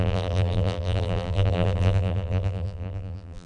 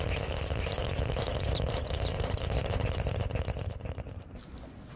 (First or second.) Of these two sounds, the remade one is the first